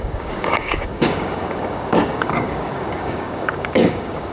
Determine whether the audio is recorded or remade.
remade